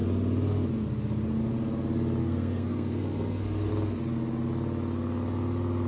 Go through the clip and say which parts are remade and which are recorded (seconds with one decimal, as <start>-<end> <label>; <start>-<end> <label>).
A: 0.0-2.2 recorded; 2.2-3.7 remade; 3.7-5.9 recorded